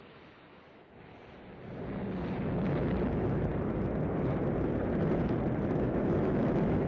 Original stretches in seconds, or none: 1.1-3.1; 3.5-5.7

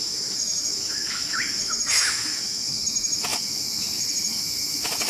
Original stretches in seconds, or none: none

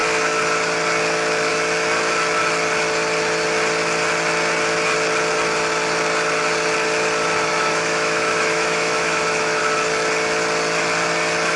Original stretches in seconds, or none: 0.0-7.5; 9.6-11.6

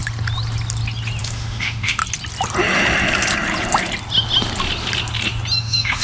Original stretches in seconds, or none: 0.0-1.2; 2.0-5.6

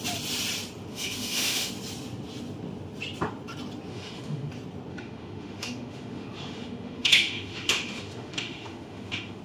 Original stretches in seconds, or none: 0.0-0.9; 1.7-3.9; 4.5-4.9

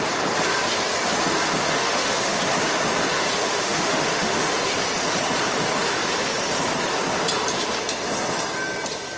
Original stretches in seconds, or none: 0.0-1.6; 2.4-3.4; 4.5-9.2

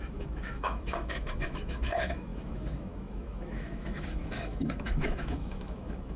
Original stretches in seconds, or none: none